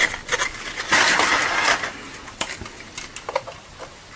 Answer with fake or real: real